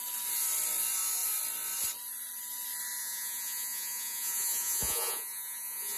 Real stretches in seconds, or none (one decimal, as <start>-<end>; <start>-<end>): 0.0-3.0